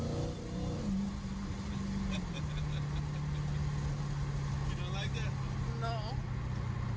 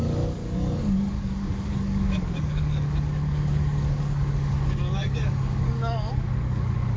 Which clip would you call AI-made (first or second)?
second